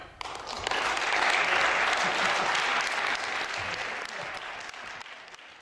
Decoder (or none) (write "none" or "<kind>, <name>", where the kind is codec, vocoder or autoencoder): none